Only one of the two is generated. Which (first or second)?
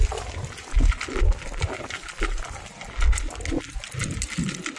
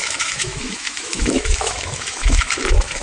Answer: second